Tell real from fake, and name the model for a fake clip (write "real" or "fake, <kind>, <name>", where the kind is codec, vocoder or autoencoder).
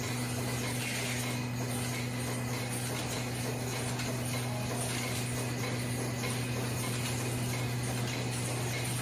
real